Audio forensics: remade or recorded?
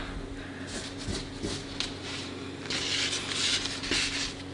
recorded